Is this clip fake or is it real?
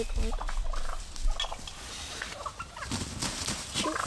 real